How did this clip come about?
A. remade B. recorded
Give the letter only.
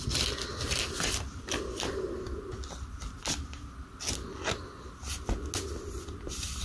B